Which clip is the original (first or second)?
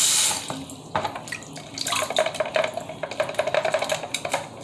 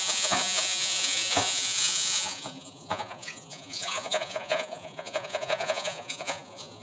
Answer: first